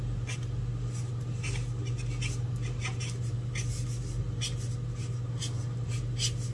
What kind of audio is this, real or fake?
real